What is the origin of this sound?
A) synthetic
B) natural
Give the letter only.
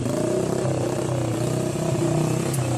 B